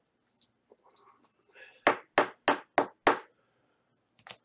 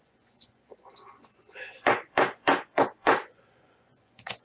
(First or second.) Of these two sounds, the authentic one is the first